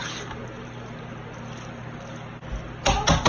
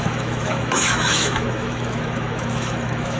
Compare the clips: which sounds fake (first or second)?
second